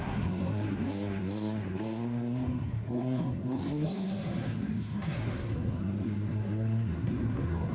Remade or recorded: remade